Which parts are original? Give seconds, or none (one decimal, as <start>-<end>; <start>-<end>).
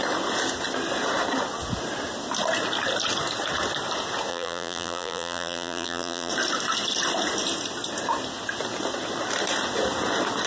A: 0.0-4.3; 6.3-10.5